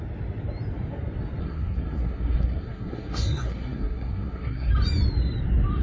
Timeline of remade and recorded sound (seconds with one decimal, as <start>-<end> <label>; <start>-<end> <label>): 0.0-1.4 recorded; 1.4-4.7 remade; 4.7-5.8 recorded

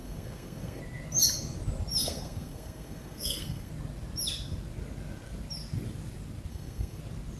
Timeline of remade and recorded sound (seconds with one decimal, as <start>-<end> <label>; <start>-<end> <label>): 0.0-0.8 remade; 0.8-2.0 recorded; 2.0-3.7 remade; 3.7-6.5 recorded; 6.5-7.0 remade; 7.0-7.4 recorded

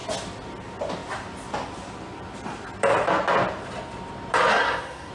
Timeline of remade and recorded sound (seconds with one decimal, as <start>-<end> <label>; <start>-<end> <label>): 0.0-4.5 recorded; 4.5-5.1 remade

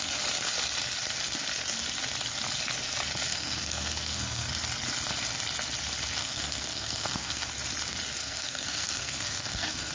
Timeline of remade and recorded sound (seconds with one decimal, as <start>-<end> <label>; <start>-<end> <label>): 0.0-3.3 recorded; 3.3-4.5 remade; 4.5-6.2 recorded; 6.2-7.5 remade; 7.5-8.2 recorded; 8.2-9.9 remade

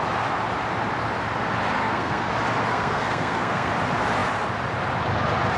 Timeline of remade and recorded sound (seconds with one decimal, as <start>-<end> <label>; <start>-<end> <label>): 0.0-1.8 recorded; 1.8-2.3 remade; 2.3-2.7 recorded; 2.7-3.7 remade; 3.7-5.6 recorded